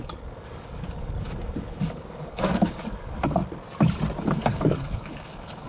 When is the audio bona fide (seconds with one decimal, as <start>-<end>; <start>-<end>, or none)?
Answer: 3.4-4.2